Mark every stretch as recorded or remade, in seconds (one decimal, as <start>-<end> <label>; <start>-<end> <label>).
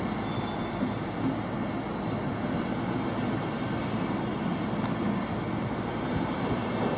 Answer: 0.0-7.0 recorded